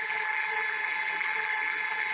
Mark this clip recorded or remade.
remade